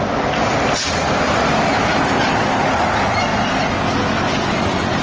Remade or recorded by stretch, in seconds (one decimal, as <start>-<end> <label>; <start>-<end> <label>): 0.0-5.0 recorded